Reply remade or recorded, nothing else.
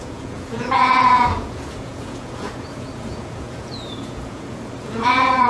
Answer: remade